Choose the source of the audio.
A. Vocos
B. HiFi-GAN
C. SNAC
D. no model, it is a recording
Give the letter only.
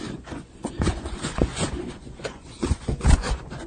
A